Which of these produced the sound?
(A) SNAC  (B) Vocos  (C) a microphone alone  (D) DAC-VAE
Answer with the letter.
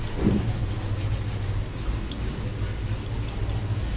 C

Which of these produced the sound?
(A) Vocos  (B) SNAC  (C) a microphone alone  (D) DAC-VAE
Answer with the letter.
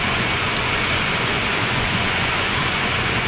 A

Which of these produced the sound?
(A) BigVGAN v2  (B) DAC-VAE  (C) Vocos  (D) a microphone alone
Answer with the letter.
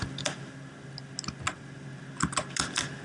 D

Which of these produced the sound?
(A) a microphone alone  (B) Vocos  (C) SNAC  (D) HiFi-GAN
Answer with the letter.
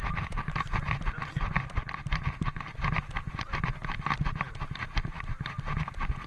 A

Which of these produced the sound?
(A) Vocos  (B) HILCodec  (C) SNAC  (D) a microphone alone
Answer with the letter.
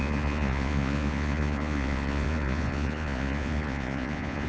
A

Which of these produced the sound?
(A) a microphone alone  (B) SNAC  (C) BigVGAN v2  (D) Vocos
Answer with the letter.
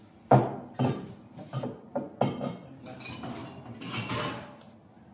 A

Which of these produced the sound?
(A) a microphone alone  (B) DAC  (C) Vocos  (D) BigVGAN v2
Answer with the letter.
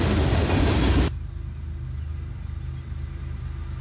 A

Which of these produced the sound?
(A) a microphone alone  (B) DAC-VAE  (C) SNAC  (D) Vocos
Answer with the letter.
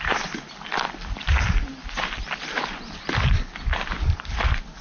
A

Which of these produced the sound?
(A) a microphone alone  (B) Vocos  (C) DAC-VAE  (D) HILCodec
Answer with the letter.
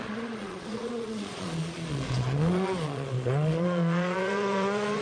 B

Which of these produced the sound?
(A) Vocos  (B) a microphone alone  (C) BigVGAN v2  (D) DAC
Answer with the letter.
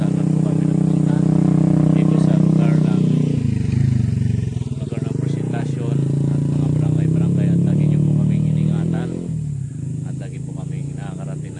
B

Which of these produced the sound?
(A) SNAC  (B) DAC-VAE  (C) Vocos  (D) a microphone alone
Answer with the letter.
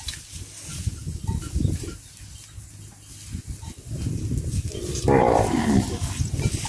D